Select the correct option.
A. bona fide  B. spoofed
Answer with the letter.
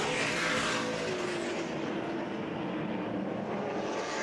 A